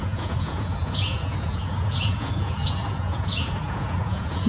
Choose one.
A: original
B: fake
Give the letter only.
B